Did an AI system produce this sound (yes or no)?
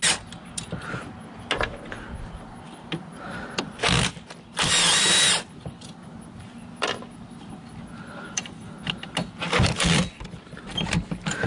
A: no